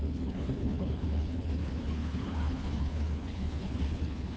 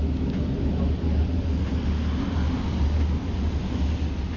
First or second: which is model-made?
first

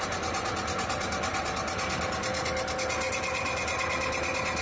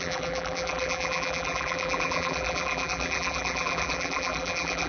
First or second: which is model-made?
second